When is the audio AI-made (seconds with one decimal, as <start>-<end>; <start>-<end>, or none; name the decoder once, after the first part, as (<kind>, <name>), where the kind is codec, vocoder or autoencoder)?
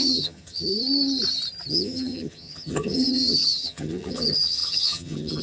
0.0-0.7 (vocoder, HiFi-GAN); 1.7-5.4